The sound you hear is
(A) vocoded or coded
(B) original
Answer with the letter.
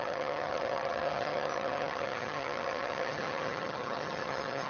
A